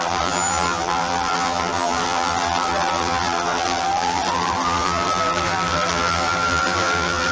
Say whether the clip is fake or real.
fake